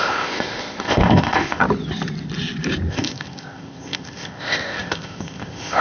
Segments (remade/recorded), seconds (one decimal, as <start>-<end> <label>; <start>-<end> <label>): 0.0-1.6 remade; 1.6-2.9 recorded; 2.9-5.8 remade